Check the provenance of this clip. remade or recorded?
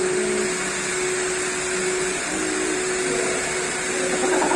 recorded